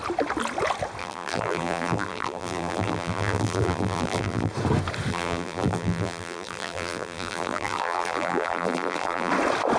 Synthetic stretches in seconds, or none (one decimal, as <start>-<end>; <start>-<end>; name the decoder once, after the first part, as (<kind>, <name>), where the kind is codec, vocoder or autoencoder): 1.0-4.5 (vocoder, BigVGAN v2); 5.1-9.3